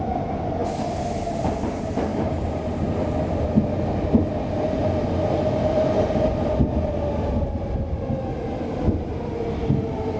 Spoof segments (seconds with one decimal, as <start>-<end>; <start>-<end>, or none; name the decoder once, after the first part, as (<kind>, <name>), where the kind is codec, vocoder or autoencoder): none